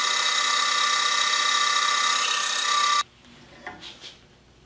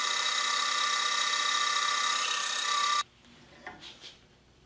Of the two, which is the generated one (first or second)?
second